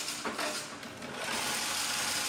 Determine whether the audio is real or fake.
real